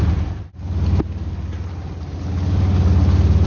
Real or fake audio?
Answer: real